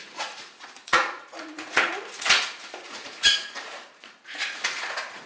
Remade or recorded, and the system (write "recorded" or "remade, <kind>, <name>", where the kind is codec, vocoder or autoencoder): remade, vocoder, Vocos